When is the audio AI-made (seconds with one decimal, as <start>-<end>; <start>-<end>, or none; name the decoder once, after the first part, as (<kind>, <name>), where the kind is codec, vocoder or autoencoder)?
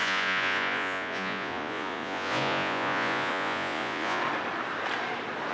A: 0.0-4.2 (vocoder, Vocos)